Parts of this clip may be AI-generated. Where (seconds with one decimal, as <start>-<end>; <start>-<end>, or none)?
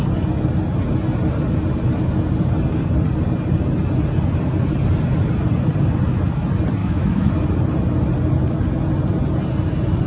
6.8-7.3